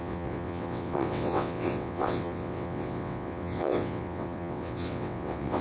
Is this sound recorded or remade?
remade